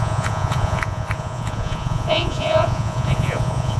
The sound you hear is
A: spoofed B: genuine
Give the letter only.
A